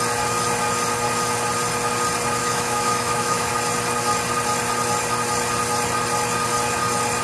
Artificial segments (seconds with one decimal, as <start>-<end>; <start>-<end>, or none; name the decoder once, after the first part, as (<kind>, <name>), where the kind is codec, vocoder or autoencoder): 2.4-3.5 (autoencoder, DAC-VAE)